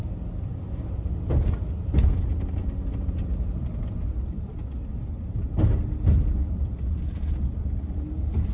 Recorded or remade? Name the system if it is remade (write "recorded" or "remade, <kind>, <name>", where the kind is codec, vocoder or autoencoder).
recorded